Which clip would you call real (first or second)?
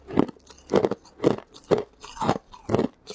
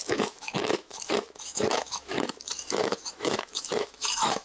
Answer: first